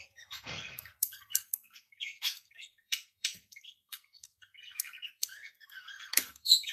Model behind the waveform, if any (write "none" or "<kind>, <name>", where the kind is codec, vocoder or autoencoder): codec, SNAC